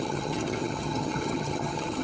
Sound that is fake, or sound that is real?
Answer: fake